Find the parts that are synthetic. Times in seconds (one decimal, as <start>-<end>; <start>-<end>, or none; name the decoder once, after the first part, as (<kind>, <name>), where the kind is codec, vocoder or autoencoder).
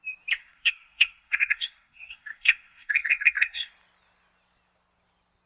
0.4-3.7 (codec, SNAC)